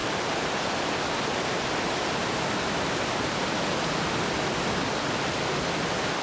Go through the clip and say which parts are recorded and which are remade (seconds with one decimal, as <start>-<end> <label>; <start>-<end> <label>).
0.0-6.2 recorded